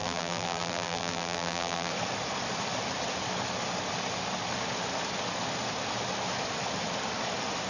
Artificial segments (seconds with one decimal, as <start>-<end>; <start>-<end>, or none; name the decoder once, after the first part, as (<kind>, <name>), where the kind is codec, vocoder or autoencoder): 0.0-1.9 (vocoder, BigVGAN v2)